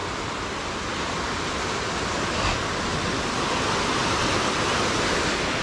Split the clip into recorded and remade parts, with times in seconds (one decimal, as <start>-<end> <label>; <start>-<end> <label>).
0.0-5.6 recorded